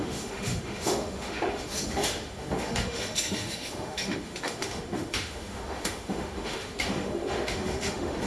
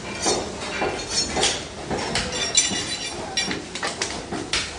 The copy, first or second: first